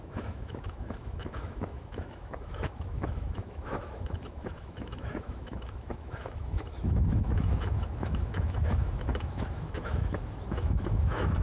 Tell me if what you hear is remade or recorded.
remade